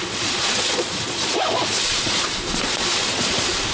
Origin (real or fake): fake